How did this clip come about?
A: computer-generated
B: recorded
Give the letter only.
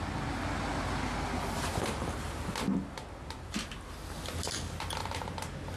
B